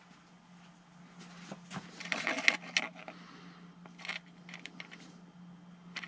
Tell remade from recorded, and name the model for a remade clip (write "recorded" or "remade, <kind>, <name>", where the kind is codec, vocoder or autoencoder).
recorded